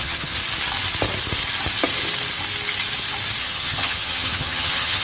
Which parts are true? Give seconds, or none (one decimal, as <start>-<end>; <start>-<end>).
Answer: 0.4-3.4